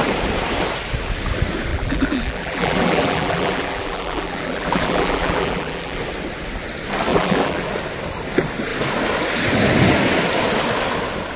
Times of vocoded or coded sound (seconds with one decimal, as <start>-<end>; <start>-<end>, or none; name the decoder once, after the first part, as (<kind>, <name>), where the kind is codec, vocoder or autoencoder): 1.7-6.0 (vocoder, BigVGAN v2); 7.1-7.6